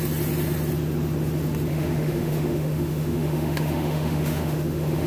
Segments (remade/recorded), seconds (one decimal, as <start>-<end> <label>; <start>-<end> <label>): 0.0-1.7 recorded; 1.7-5.1 remade